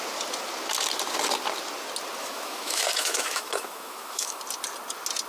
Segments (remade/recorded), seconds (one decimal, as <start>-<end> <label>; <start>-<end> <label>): 0.0-2.2 recorded; 2.2-4.4 remade; 4.4-5.3 recorded